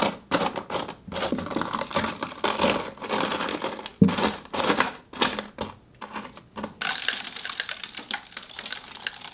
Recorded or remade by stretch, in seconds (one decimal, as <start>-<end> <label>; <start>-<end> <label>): 0.0-9.3 recorded